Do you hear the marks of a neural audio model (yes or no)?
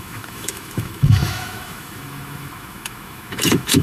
yes